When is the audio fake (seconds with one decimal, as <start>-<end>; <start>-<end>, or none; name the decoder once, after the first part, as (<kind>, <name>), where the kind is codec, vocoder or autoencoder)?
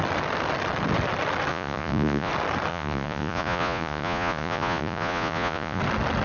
1.5-2.3 (vocoder, Vocos); 2.7-5.8